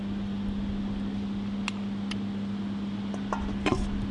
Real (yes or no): yes